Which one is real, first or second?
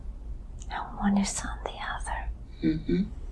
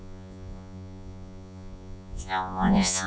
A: first